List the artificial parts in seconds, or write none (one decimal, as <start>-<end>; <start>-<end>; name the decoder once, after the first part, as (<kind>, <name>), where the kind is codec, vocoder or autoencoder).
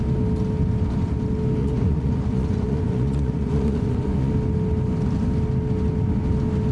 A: 1.6-4.3 (vocoder, Vocos)